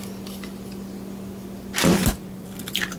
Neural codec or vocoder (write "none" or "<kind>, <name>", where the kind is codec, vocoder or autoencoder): none